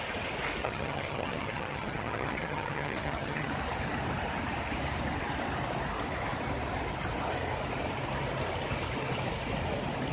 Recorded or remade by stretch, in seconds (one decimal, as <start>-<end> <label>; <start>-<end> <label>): 0.0-0.6 recorded; 0.6-3.5 remade; 3.5-10.1 recorded